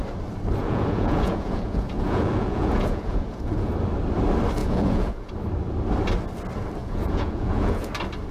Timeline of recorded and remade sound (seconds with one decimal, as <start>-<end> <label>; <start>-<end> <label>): 0.0-0.6 recorded; 0.6-3.7 remade; 3.7-4.6 recorded; 4.6-5.3 remade; 5.3-6.8 recorded; 6.8-7.9 remade; 7.9-8.3 recorded